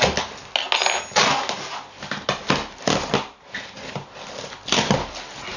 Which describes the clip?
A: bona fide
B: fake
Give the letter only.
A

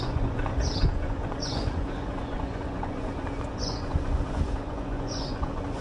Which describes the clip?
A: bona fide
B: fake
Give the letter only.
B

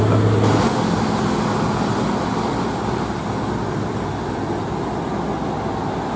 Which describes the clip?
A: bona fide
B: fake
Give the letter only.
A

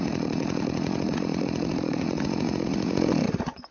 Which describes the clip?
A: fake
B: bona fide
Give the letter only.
A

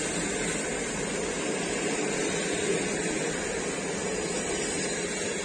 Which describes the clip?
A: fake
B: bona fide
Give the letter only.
B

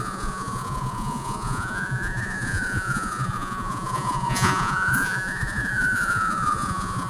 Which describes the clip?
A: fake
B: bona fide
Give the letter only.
A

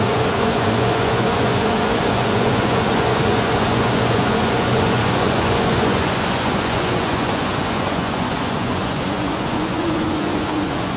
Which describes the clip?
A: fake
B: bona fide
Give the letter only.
A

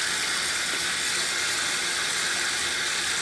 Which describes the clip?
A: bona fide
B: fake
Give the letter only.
A